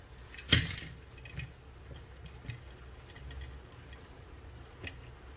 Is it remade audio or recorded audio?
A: recorded